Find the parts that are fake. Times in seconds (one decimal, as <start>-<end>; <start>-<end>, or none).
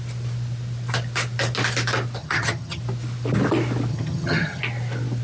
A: 2.2-2.8; 3.9-4.6